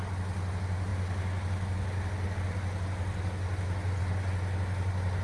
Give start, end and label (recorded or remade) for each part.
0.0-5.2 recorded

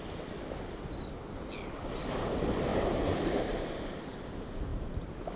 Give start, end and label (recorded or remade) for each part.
0.0-2.7 recorded; 2.7-4.2 remade; 4.2-4.7 recorded; 4.7-5.4 remade

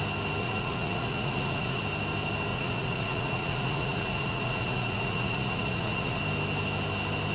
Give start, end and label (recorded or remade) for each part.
0.0-0.4 recorded; 0.4-1.8 remade; 1.8-2.5 recorded; 2.5-6.2 remade; 6.2-7.3 recorded

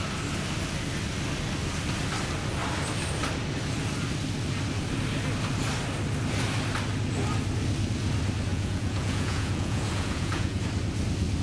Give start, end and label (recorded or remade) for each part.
0.0-8.5 recorded; 8.5-10.6 remade; 10.6-11.4 recorded